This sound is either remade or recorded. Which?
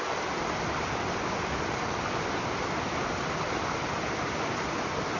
recorded